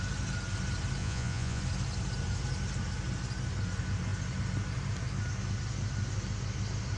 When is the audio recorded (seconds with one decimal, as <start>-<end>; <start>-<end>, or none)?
0.0-1.0; 1.6-7.0